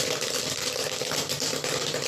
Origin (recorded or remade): remade